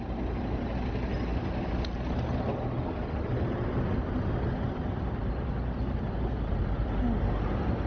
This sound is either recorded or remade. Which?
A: recorded